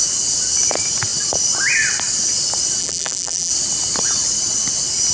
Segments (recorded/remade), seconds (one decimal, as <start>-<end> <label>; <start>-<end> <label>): 0.0-2.8 recorded; 2.8-3.5 remade; 3.5-5.1 recorded